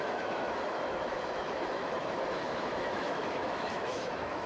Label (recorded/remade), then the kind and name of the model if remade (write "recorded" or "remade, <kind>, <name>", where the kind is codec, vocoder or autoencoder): remade, autoencoder, DAC-VAE